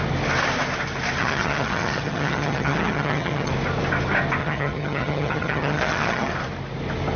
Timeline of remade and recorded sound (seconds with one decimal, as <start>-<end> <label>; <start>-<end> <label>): 0.0-1.2 recorded; 1.2-3.5 remade; 3.5-4.4 recorded; 4.4-6.3 remade; 6.3-7.2 recorded